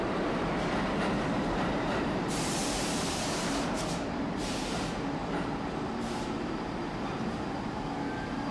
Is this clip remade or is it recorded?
remade